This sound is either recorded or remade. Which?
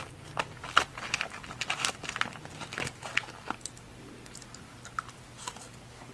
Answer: recorded